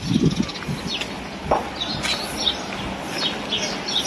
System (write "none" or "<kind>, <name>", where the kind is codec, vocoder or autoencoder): none